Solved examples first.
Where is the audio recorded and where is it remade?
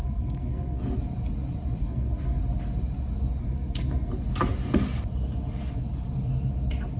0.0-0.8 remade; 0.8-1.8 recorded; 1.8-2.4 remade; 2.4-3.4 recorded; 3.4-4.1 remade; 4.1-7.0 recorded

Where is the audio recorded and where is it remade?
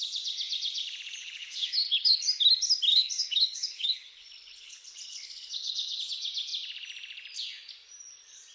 0.0-1.2 recorded; 1.2-2.2 remade; 2.2-2.9 recorded; 2.9-6.0 remade; 6.0-8.5 recorded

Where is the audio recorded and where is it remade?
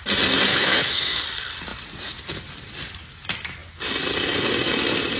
0.0-0.5 recorded; 0.5-1.2 remade; 1.2-5.2 recorded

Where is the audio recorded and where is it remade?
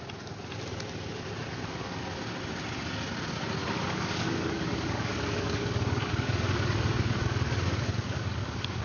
0.0-3.6 recorded; 3.6-8.8 remade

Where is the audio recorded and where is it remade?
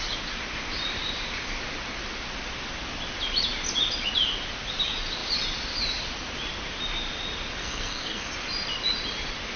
0.0-7.6 recorded; 7.6-8.3 remade; 8.3-9.6 recorded